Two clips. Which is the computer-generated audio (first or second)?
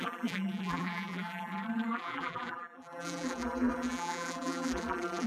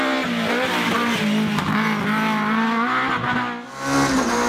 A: first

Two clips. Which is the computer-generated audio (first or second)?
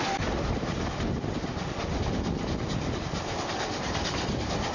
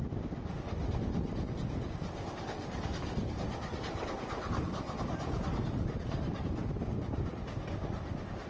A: first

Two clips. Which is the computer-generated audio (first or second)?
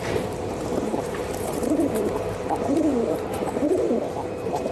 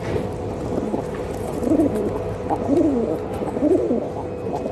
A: first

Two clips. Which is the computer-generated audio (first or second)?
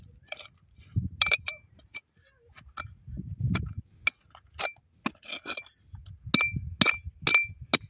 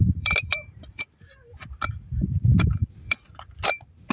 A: second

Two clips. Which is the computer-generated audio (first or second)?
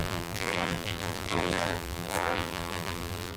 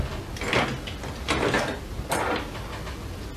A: first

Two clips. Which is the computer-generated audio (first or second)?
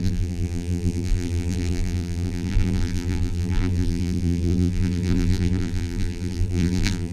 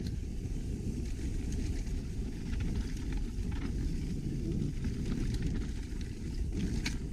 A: first